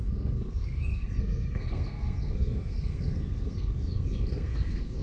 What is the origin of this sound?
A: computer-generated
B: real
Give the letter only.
A